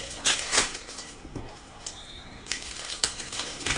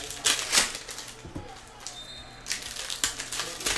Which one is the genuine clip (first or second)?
second